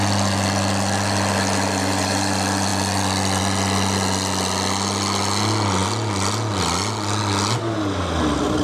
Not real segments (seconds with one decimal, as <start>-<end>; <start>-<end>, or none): 5.8-7.2